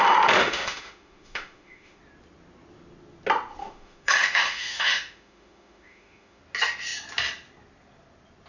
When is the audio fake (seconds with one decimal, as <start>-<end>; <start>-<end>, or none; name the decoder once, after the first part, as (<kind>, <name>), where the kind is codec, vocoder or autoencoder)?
0.4-2.0 (autoencoder, DAC-VAE); 3.6-6.4